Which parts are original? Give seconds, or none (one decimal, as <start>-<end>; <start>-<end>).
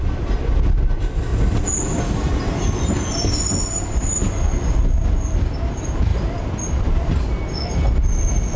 0.0-8.6